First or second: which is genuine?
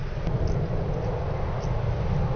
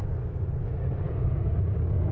first